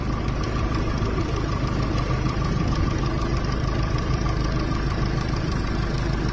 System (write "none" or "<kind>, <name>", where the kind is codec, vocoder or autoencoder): vocoder, BigVGAN v2